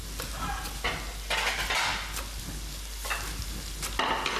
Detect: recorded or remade recorded